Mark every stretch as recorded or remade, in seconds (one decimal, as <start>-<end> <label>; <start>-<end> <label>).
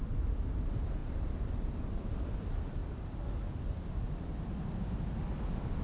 0.0-1.0 recorded; 1.0-2.4 remade; 2.4-5.8 recorded